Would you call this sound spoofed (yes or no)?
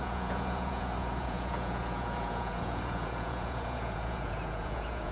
yes